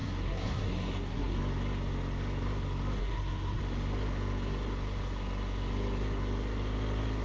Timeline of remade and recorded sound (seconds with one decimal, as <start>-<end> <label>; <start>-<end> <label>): 0.0-1.4 remade; 1.4-3.0 recorded; 3.0-3.6 remade; 3.6-7.2 recorded